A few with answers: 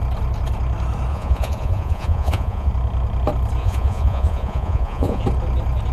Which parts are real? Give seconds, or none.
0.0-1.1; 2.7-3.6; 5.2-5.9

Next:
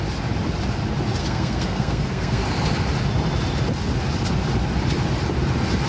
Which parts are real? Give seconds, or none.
0.0-1.2; 2.4-5.9